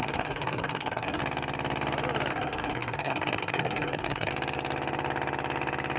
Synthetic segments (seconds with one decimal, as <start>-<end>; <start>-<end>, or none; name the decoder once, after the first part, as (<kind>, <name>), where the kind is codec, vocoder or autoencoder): 0.0-1.2 (codec, SNAC); 2.3-4.3